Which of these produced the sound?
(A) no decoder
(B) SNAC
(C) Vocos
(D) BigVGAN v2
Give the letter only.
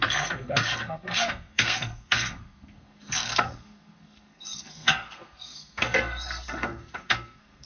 B